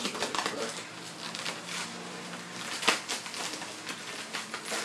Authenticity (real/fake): real